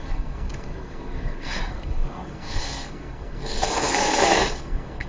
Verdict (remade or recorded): remade